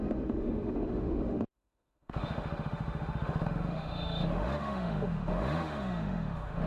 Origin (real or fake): fake